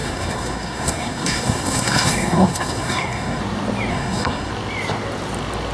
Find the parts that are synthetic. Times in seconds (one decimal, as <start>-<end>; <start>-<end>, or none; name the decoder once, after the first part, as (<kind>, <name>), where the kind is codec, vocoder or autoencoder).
0.0-3.4 (codec, SNAC); 3.9-4.5